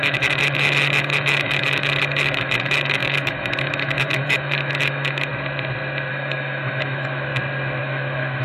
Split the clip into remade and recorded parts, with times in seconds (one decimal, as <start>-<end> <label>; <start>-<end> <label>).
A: 0.0-5.3 remade; 5.3-6.1 recorded; 6.1-7.3 remade; 7.3-7.8 recorded; 7.8-8.4 remade